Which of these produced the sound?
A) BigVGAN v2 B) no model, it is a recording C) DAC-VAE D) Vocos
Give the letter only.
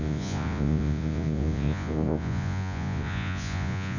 D